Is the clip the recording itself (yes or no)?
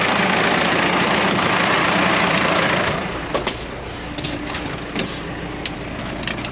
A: no